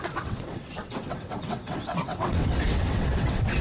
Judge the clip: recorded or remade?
remade